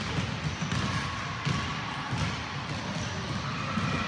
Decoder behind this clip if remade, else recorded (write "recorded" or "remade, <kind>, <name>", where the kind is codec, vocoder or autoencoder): recorded